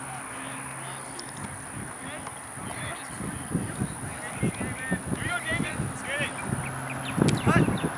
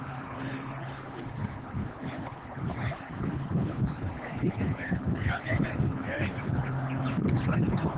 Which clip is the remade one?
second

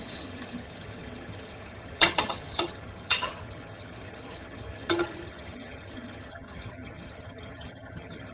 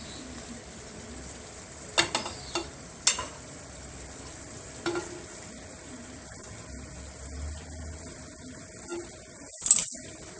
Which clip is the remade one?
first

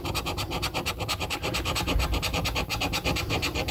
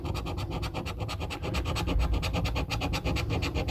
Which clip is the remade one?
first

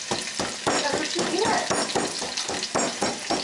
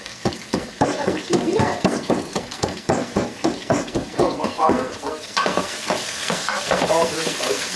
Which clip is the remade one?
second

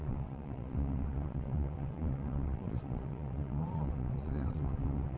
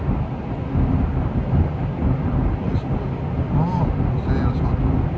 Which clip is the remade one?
first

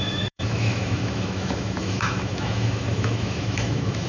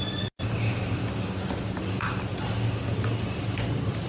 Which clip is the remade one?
first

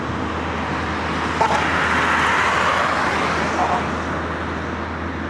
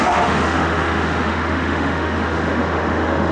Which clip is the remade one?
second